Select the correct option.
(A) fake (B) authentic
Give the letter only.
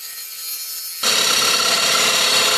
B